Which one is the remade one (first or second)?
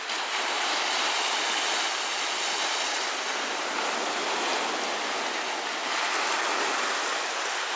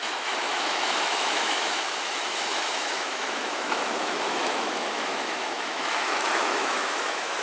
second